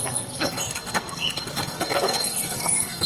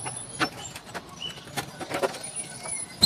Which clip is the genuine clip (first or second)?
second